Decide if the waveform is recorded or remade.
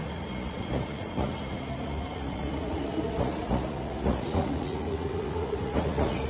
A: remade